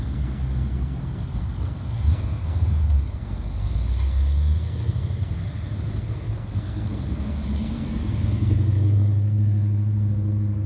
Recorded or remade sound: remade